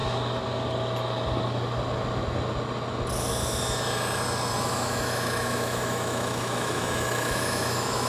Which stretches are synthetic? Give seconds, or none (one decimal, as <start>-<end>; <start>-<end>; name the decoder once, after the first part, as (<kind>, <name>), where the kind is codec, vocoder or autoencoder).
4.5-8.1 (autoencoder, DAC-VAE)